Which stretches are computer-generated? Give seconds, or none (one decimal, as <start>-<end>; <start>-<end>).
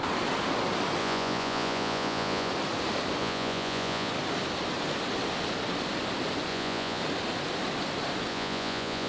1.0-2.5; 3.2-4.1; 6.5-7.0; 8.3-9.1